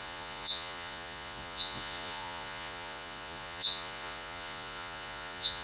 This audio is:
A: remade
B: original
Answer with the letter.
A